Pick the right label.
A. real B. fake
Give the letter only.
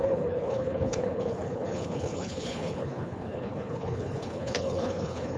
B